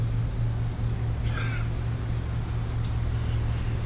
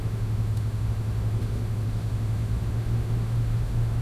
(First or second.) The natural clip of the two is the first